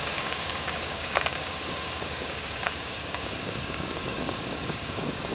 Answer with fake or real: fake